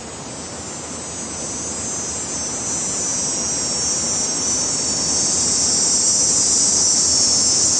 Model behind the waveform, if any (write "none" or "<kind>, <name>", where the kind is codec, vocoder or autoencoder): none